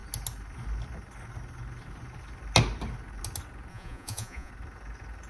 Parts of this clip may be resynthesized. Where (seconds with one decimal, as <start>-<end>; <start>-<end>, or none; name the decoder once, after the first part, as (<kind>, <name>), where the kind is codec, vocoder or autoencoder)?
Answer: 3.7-4.5 (vocoder, Vocos)